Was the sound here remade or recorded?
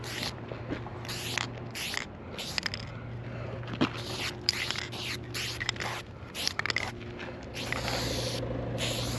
recorded